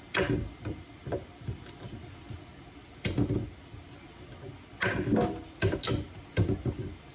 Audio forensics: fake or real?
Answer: real